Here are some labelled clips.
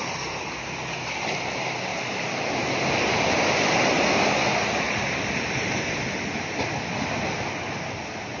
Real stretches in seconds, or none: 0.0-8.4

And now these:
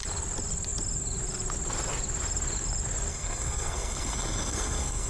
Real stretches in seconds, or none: 0.0-3.1

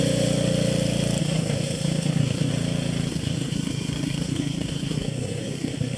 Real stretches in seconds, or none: 0.0-1.2; 2.5-3.1

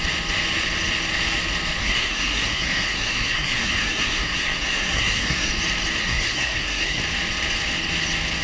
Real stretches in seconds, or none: 0.0-1.8; 5.5-6.0; 7.0-8.4

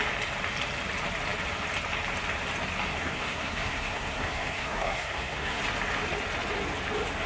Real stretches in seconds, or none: 0.0-2.9; 5.6-7.3

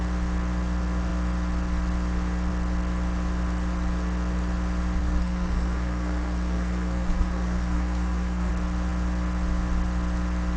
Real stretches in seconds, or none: 0.0-5.0; 8.5-10.6

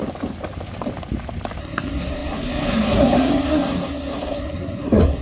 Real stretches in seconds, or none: 0.0-1.6